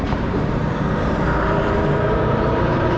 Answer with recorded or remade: remade